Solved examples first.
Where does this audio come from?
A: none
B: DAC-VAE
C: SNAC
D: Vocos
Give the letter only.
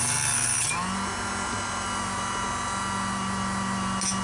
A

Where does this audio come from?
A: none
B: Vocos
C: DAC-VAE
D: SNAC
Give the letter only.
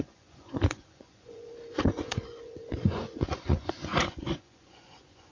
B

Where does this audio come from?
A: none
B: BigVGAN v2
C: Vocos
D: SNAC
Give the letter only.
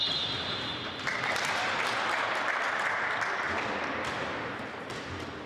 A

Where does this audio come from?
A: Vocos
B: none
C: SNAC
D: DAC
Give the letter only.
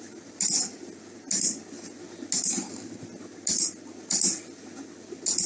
B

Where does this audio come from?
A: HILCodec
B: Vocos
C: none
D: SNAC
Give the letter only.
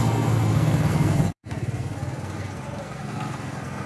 D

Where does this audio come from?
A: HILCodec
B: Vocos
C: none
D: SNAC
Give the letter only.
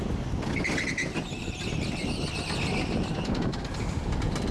C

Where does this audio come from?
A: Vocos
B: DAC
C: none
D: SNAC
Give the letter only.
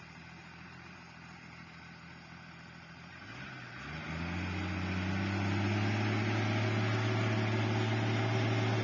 C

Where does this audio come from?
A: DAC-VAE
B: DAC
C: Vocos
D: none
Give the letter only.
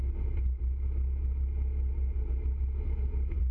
D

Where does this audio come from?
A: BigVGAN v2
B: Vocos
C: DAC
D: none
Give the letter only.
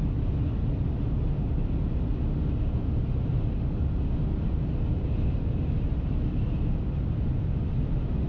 D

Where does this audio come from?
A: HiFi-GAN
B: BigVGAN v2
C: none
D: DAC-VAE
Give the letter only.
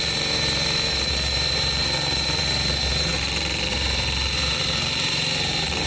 B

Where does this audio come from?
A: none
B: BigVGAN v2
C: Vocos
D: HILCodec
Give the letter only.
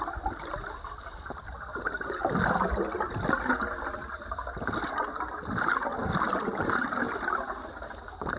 A